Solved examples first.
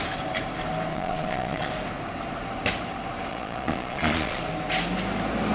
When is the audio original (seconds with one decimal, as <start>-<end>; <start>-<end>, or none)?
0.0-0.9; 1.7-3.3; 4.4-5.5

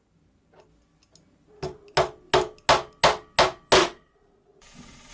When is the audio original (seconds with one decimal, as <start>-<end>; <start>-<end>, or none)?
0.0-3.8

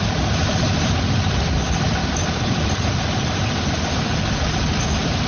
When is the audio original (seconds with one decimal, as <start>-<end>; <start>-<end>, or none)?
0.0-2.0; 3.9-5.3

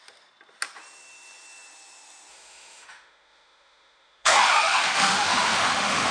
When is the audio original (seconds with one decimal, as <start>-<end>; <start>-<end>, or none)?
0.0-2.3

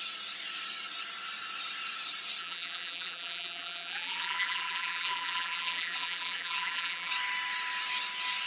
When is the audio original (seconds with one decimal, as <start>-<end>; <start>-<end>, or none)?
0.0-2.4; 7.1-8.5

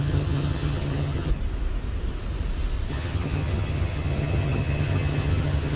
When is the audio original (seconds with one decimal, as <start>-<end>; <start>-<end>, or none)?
1.3-2.9

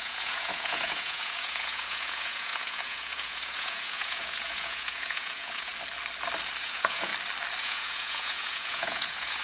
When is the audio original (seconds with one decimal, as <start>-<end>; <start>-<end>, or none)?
5.7-6.6; 7.1-7.6

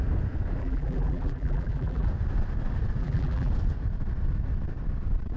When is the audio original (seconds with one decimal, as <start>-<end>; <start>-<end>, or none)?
0.0-0.6; 2.1-3.0; 3.5-5.4